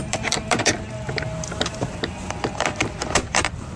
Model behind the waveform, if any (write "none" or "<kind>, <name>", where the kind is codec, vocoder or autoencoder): vocoder, BigVGAN v2